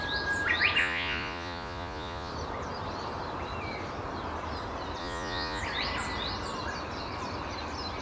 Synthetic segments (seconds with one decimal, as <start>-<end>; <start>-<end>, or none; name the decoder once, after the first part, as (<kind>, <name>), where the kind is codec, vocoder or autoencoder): 0.8-2.3 (vocoder, Vocos); 5.0-5.6